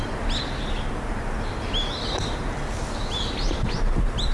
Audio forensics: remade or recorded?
recorded